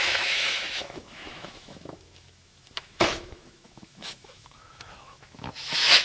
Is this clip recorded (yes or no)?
no